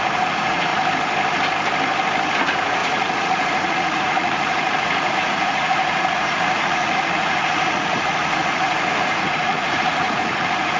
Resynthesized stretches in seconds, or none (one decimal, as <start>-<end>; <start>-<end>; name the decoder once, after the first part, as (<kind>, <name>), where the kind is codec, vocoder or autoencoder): 0.0-0.7 (vocoder, Vocos); 2.4-10.8